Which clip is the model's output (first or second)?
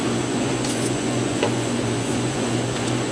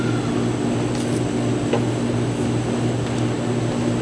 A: first